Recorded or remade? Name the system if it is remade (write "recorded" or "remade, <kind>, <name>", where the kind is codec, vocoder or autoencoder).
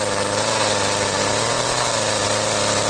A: recorded